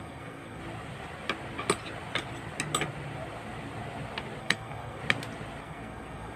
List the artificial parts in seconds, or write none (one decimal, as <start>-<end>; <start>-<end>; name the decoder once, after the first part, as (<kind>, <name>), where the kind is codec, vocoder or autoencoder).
0.0-0.6 (codec, SNAC); 4.4-5.0; 5.6-6.4